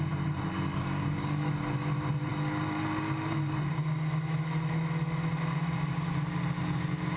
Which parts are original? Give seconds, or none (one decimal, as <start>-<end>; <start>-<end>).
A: 0.0-0.7; 1.5-7.2